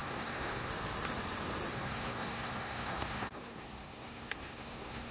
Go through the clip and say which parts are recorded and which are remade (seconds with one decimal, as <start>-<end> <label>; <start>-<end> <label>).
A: 0.0-0.7 remade; 0.7-1.7 recorded; 1.7-5.1 remade